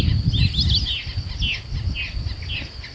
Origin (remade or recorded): recorded